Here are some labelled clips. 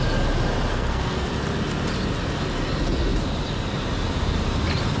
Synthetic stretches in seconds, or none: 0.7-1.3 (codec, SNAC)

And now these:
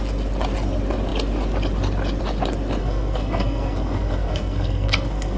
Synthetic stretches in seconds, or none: 2.8-5.4 (codec, SNAC)